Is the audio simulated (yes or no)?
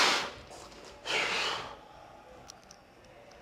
no